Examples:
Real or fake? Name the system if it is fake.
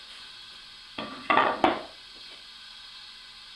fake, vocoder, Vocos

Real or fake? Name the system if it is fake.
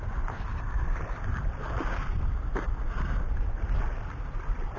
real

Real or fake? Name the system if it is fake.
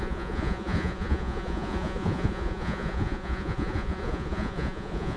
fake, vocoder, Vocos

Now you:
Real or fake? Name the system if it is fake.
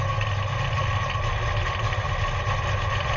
real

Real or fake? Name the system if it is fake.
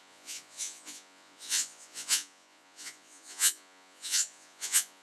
fake, vocoder, Vocos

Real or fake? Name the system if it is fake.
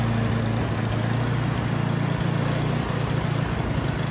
real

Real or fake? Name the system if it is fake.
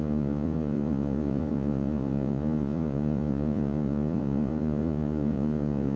fake, vocoder, Vocos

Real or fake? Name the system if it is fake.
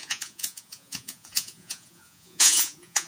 fake, vocoder, Vocos